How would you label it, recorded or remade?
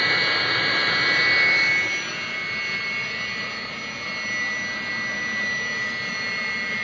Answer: recorded